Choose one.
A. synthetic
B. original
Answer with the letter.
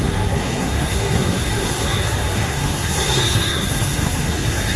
A